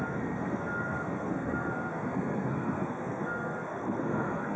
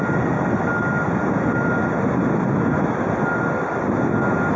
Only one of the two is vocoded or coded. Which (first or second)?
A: first